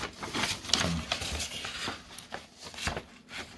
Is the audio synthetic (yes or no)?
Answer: no